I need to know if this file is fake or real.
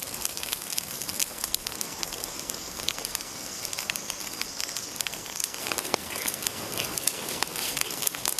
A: fake